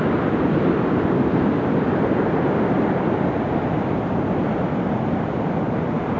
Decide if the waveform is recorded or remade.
remade